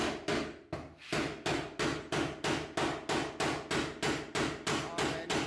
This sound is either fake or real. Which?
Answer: real